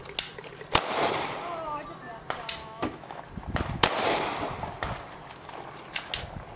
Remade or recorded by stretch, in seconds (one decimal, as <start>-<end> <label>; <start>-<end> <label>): 0.0-2.6 recorded; 2.6-3.3 remade; 3.3-6.6 recorded